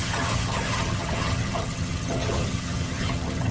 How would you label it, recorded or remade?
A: remade